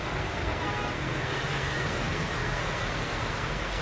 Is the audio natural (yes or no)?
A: no